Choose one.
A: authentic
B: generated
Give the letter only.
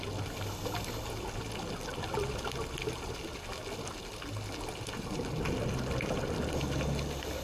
A